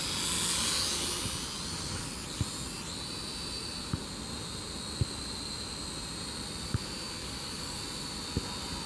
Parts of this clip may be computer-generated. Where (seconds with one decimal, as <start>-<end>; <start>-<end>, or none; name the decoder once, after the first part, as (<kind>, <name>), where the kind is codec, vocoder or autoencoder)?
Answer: 7.2-7.8 (codec, DAC)